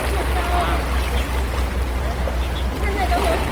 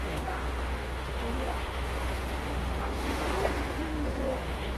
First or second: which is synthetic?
second